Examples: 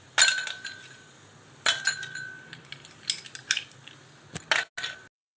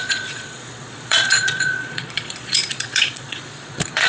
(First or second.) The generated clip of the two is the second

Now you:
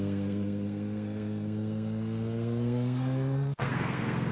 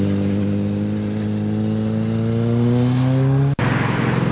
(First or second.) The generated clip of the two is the first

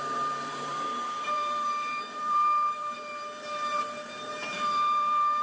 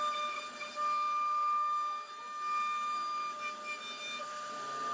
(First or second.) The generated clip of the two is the first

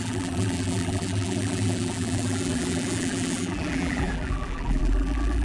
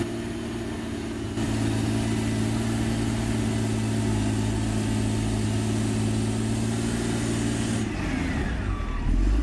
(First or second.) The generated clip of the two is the first